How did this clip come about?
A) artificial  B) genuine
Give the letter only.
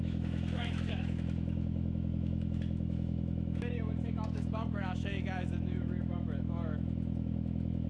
A